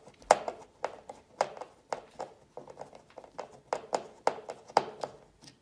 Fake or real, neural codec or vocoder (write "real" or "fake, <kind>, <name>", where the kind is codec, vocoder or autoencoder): real